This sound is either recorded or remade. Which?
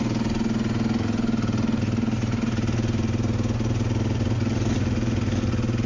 recorded